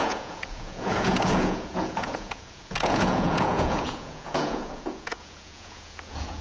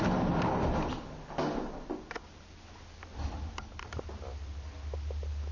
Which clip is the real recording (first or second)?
second